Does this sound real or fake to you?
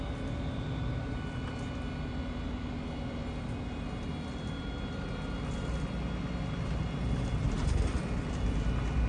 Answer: real